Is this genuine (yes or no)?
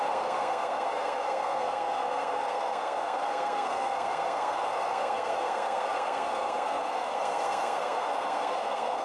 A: no